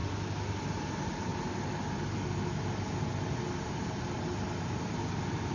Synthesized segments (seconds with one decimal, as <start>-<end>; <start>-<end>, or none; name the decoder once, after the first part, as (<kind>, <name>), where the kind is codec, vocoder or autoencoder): 0.7-1.3 (vocoder, BigVGAN v2); 4.6-5.5